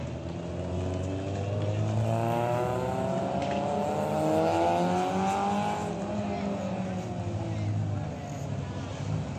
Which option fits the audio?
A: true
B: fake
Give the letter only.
A